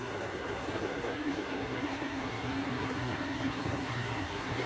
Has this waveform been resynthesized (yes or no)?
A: yes